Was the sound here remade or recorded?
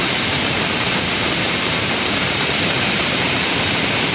remade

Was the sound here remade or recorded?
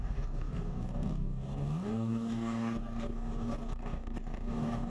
remade